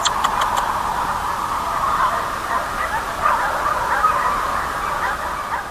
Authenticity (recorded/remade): recorded